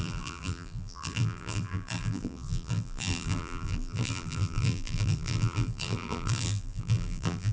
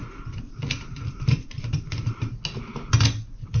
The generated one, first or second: first